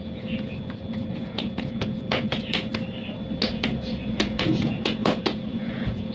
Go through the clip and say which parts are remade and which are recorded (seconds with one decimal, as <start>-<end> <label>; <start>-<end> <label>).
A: 0.0-2.7 remade; 2.7-3.5 recorded; 3.5-6.1 remade